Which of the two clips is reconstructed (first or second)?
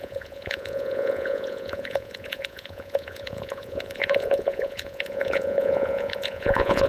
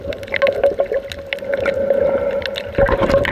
first